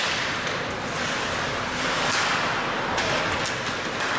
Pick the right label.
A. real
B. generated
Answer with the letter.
A